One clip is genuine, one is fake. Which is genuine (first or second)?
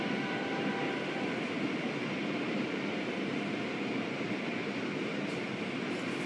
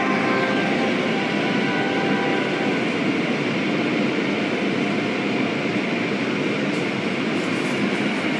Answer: second